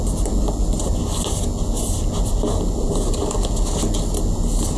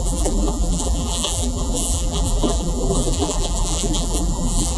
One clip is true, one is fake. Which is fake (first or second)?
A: second